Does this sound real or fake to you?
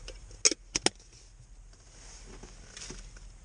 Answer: real